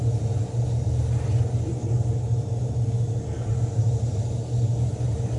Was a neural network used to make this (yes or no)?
no